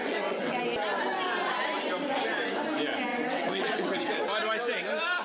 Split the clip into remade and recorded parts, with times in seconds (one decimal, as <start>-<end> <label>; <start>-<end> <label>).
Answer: 0.0-0.6 remade; 0.6-3.1 recorded; 3.1-4.1 remade; 4.1-5.2 recorded